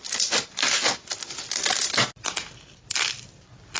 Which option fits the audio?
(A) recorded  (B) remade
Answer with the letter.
A